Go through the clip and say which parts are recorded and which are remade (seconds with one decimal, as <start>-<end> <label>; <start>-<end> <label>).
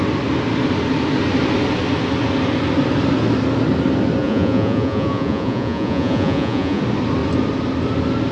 0.0-4.2 recorded; 4.2-6.8 remade; 6.8-8.3 recorded